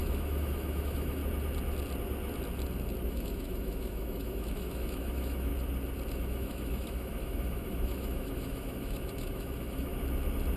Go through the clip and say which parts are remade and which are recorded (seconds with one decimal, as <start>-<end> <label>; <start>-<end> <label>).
0.0-1.2 remade; 1.2-3.1 recorded; 3.1-5.5 remade; 5.5-6.1 recorded; 6.1-9.9 remade; 9.9-10.6 recorded